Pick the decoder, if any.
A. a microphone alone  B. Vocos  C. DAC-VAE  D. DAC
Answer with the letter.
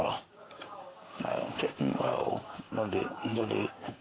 D